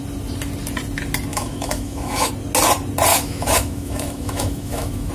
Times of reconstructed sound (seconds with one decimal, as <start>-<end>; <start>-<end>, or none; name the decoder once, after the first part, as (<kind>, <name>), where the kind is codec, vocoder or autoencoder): 1.3-2.3 (autoencoder, DAC-VAE); 3.1-5.1